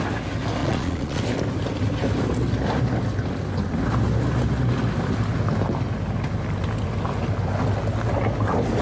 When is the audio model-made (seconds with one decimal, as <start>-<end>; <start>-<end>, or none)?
0.6-1.2